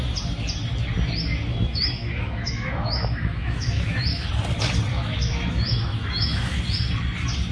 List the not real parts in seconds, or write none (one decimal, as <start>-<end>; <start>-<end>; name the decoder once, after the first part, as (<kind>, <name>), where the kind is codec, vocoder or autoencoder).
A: 1.5-4.3 (autoencoder, DAC-VAE); 4.9-6.6